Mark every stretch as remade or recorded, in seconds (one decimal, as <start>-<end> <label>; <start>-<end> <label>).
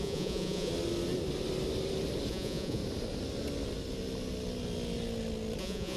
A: 0.0-0.7 remade; 0.7-2.3 recorded; 2.3-2.8 remade; 2.8-5.6 recorded; 5.6-6.0 remade